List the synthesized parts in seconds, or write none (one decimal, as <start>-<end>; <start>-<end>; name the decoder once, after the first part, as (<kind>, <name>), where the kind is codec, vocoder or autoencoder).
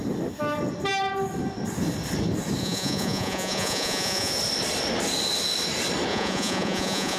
2.6-4.3 (vocoder, Vocos); 6.1-7.2